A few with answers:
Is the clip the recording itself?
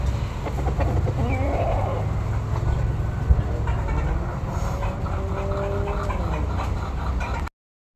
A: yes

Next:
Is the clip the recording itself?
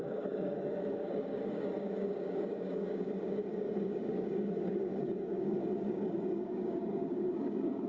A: no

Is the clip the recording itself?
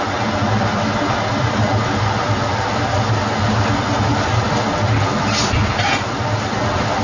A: yes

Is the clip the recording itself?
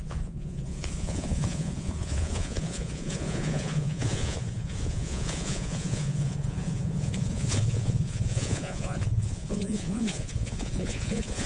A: no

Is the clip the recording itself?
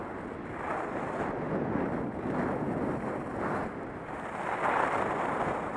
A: yes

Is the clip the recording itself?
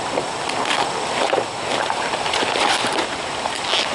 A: yes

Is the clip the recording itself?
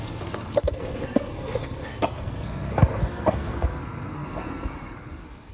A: no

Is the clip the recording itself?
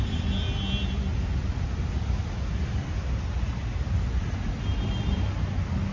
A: yes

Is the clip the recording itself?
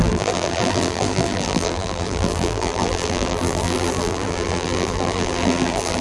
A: no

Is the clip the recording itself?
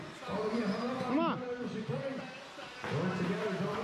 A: yes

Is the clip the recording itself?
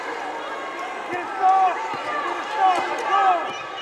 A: yes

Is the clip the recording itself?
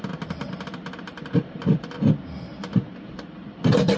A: yes